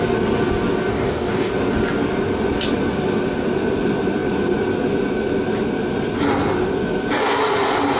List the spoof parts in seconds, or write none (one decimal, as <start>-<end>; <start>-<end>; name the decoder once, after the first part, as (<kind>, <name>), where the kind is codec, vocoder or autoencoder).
0.9-1.5 (codec, DAC)